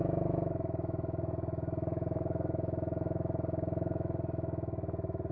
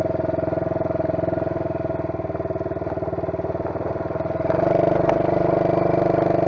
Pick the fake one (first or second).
first